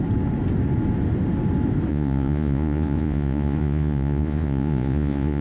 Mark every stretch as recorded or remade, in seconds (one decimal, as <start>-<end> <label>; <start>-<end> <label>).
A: 0.0-1.9 recorded; 1.9-5.4 remade